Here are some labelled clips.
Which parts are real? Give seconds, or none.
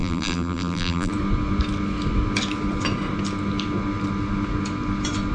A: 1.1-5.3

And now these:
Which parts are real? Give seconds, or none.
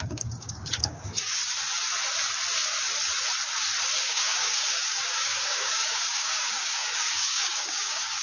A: 1.4-4.0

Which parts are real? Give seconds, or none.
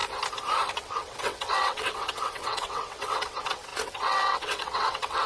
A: 0.0-0.7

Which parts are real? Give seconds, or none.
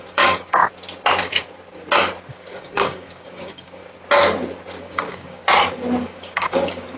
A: 0.6-2.3; 3.8-4.8; 5.4-6.0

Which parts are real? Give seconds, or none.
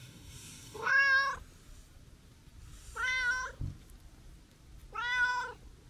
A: 0.9-5.9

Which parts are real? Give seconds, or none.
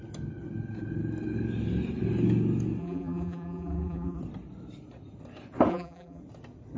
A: 0.0-2.8; 4.2-5.7; 6.2-6.8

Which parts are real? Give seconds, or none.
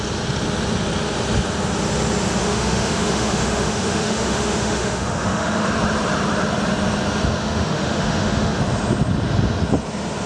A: 0.0-2.4; 5.7-7.4; 8.6-10.3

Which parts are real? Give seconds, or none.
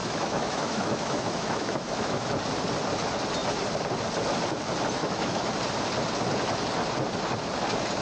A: 2.3-5.0; 5.6-8.0